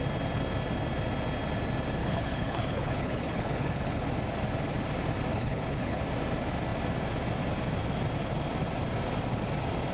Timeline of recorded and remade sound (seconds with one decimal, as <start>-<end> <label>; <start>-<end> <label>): 0.0-2.0 recorded; 2.0-4.0 remade; 4.0-5.3 recorded; 5.3-6.0 remade; 6.0-9.9 recorded